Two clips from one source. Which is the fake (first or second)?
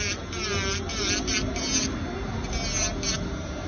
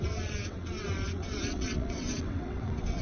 second